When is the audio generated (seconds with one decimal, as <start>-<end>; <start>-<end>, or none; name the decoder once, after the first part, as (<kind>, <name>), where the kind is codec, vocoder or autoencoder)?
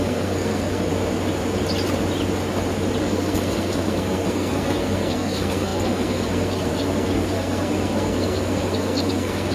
0.0-0.9 (codec, SNAC); 3.0-9.5